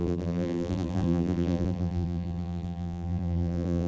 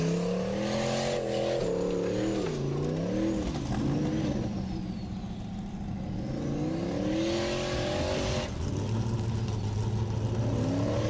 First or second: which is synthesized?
first